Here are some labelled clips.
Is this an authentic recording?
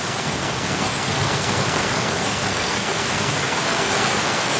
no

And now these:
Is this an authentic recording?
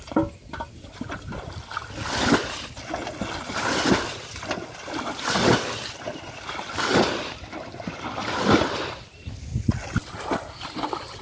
yes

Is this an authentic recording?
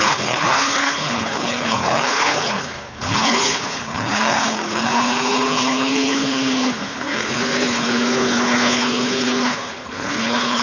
no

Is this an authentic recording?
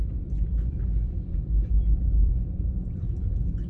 no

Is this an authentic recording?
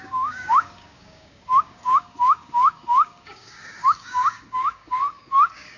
no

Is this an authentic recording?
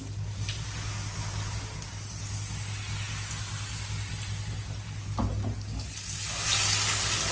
yes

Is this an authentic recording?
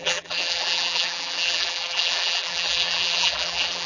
no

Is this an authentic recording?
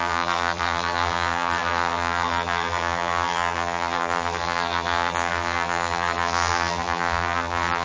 no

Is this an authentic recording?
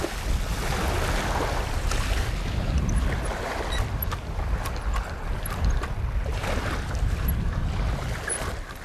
yes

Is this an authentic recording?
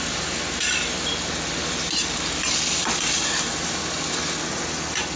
yes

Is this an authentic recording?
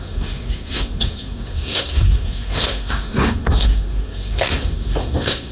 no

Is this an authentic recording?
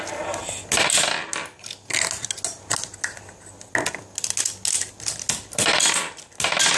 yes